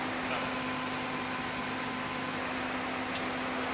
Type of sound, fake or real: real